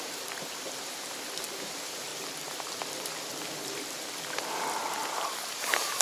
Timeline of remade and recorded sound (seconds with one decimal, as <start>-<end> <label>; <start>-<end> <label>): 0.0-2.1 remade; 2.1-5.2 recorded; 5.2-6.0 remade

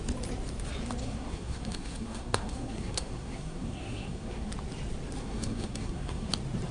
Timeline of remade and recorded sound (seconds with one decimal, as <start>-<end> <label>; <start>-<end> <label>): 0.0-1.0 recorded; 1.0-4.5 remade; 4.5-5.2 recorded; 5.2-6.3 remade; 6.3-6.7 recorded

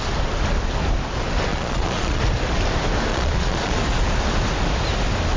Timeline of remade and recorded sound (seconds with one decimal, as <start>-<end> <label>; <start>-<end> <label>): 0.0-1.5 recorded; 1.5-2.2 remade; 2.2-3.1 recorded; 3.1-3.8 remade; 3.8-5.4 recorded

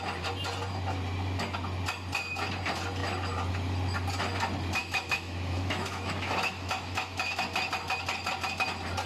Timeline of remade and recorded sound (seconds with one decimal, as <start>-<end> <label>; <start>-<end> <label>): 0.0-4.8 recorded; 4.8-7.4 remade; 7.4-9.1 recorded